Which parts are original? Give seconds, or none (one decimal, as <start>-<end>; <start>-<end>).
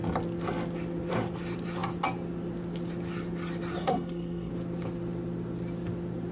0.0-3.8; 4.5-6.3